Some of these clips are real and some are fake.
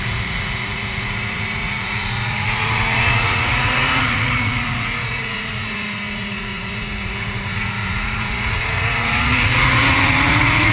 fake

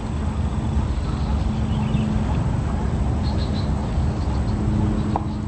real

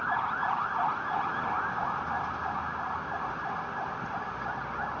real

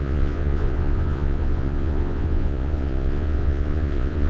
fake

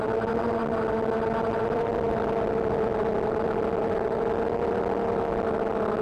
real